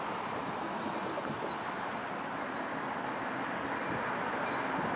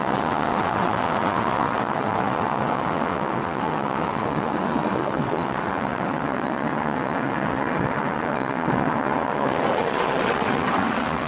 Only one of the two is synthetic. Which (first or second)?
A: second